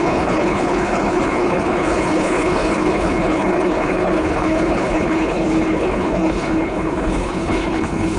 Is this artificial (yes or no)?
yes